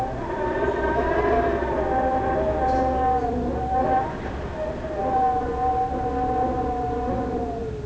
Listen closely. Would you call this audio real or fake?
real